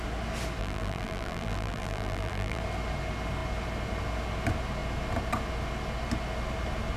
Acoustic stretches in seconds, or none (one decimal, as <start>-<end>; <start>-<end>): 0.0-0.6; 2.6-7.0